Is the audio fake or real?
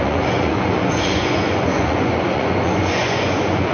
fake